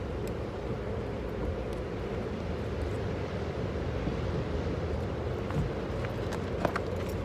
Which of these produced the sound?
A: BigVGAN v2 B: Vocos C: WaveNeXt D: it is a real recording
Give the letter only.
D